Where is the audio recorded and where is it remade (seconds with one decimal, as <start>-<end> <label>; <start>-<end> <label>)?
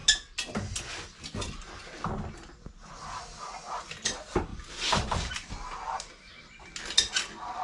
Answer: 0.0-4.5 recorded; 4.5-5.5 remade; 5.5-7.6 recorded